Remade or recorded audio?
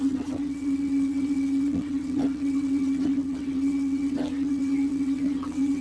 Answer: remade